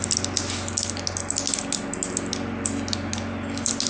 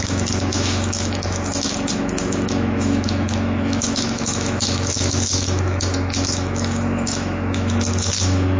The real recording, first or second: first